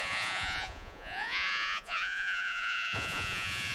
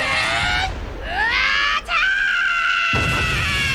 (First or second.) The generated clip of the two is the first